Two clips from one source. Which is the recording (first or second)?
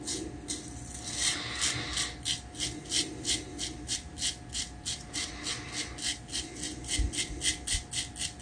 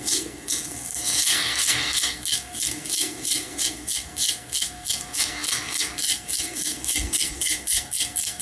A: first